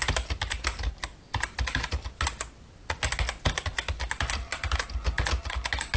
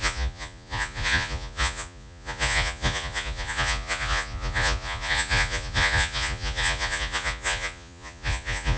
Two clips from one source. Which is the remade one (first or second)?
second